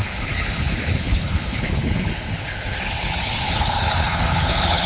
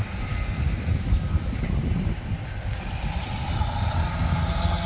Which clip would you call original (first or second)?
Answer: second